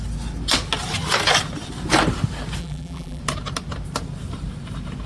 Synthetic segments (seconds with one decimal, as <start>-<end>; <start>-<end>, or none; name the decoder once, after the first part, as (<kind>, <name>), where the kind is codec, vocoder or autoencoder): 2.6-3.2 (vocoder, BigVGAN v2)